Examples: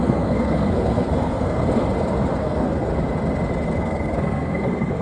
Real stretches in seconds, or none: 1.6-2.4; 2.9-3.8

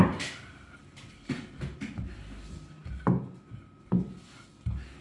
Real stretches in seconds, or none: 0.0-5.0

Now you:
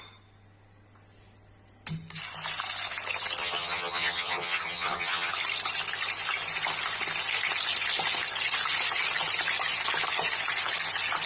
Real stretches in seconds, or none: 0.0-3.4; 5.3-11.3

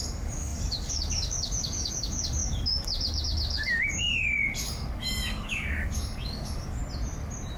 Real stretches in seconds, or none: 6.8-7.6

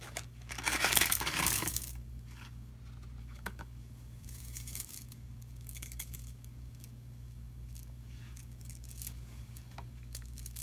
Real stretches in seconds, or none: 2.7-3.2